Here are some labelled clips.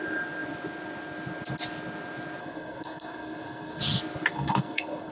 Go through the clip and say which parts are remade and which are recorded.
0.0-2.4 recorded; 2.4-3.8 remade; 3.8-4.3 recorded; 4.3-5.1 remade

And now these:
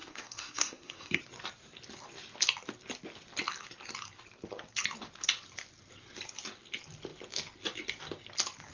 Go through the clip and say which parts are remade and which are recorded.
0.0-1.2 remade; 1.2-8.7 recorded

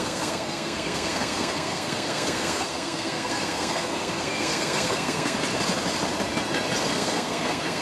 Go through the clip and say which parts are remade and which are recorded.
0.0-5.4 remade; 5.4-6.9 recorded; 6.9-7.8 remade

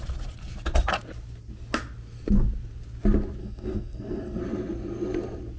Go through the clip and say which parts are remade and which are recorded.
0.0-3.4 recorded; 3.4-4.4 remade; 4.4-5.6 recorded

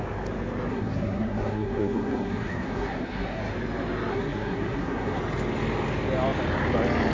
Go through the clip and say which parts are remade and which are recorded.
0.0-0.7 recorded; 0.7-3.4 remade; 3.4-4.1 recorded; 4.1-5.2 remade; 5.2-7.1 recorded